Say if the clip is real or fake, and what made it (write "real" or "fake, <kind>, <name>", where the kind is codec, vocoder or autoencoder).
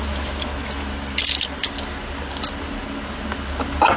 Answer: real